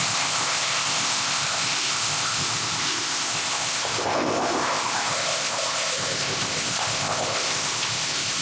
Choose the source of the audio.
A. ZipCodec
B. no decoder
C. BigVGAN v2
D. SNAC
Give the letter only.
A